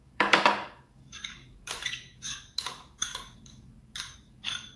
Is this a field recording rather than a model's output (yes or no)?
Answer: no